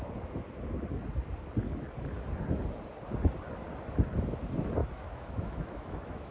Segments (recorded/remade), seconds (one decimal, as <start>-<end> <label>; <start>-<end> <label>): 0.0-4.8 recorded; 4.8-6.3 remade